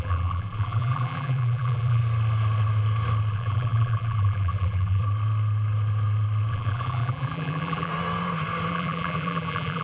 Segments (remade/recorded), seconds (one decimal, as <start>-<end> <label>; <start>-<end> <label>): 0.0-2.0 remade; 2.0-3.3 recorded; 3.3-5.0 remade; 5.0-6.5 recorded; 6.5-7.9 remade; 7.9-8.7 recorded; 8.7-9.8 remade